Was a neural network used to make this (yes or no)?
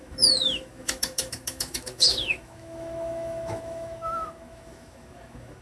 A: yes